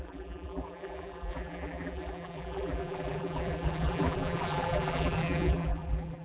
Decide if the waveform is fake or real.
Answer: fake